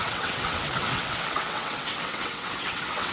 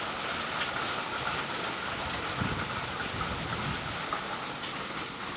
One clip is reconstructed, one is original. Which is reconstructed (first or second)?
first